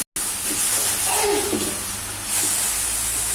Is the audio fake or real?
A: real